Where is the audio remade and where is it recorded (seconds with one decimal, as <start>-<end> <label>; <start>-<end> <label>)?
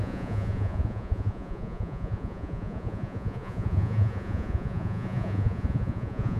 0.0-6.4 remade